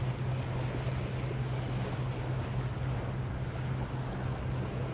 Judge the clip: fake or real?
real